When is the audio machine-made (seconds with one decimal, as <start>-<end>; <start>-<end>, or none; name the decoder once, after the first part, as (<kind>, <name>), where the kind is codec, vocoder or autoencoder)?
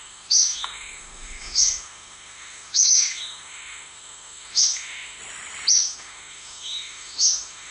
0.0-5.2 (autoencoder, DAC-VAE); 5.7-7.7